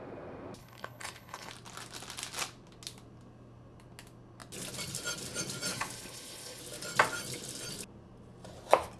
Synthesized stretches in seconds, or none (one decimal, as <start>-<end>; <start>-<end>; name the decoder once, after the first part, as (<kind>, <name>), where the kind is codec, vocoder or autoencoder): 0.6-1.5 (codec, HILCodec); 5.7-6.6